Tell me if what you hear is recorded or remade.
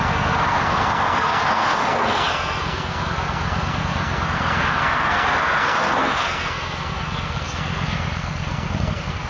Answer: remade